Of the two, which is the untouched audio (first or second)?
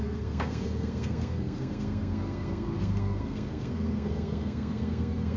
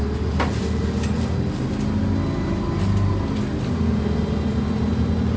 second